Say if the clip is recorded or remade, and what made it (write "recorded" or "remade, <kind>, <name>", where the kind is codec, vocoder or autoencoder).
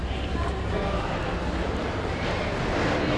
recorded